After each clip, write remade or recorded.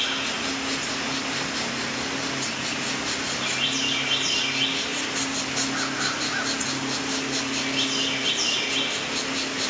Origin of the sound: recorded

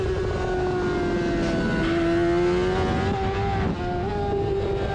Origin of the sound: recorded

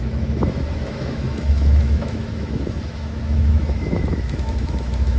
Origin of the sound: remade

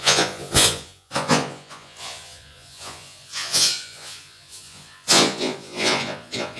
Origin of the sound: remade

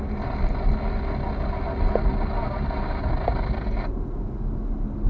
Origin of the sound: recorded